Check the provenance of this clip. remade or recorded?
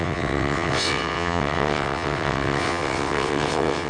remade